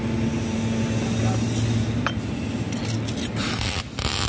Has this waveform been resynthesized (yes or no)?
no